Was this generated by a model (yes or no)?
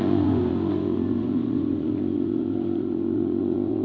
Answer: yes